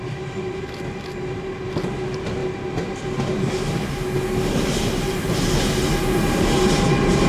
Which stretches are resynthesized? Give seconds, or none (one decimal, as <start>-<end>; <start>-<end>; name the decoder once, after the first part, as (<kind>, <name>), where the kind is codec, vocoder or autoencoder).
none